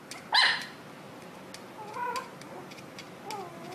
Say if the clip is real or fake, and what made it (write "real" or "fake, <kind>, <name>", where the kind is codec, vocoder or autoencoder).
real